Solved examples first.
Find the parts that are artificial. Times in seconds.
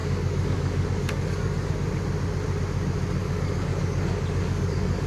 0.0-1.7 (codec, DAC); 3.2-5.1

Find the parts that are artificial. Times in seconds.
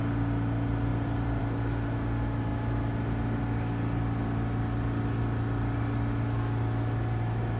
0.9-1.4 (vocoder, BigVGAN v2)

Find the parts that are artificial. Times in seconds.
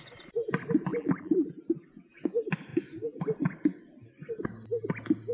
0.9-1.5 (vocoder, BigVGAN v2)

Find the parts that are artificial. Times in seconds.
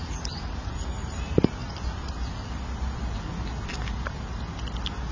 none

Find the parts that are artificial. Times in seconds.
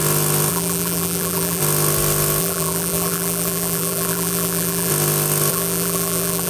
0.5-1.6 (vocoder, BigVGAN v2); 2.4-4.9; 5.5-6.5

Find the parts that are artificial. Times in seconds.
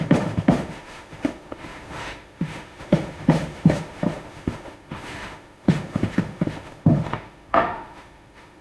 0.0-8.6 (autoencoder, DAC-VAE)